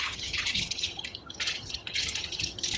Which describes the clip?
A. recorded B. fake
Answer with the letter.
B